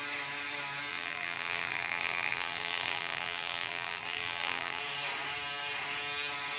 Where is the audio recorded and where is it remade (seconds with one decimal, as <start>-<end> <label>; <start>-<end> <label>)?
0.0-0.9 recorded; 0.9-4.8 remade; 4.8-6.6 recorded